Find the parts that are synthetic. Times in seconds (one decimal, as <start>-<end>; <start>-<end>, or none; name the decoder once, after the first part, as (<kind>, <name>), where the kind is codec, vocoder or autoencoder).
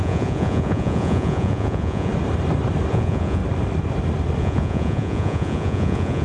0.0-2.1 (vocoder, Vocos); 2.9-3.4; 4.4-6.2